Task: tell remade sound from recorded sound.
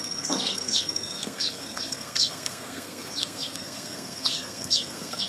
remade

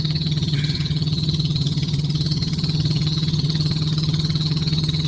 remade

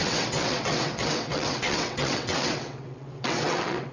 remade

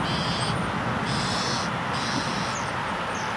recorded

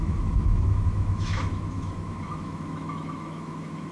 remade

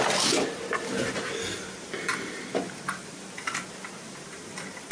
recorded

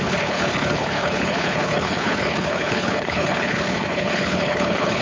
remade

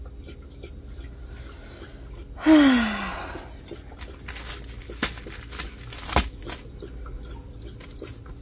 recorded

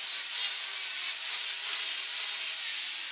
recorded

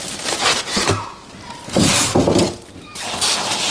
recorded